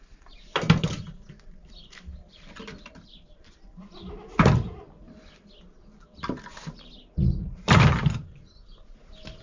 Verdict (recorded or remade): remade